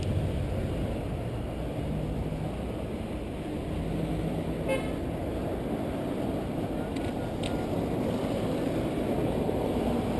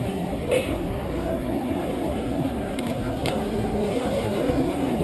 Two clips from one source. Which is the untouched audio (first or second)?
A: first